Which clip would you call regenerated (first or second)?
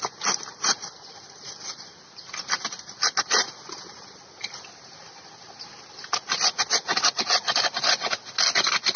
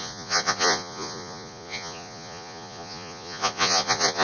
second